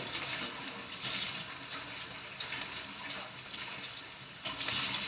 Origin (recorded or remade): recorded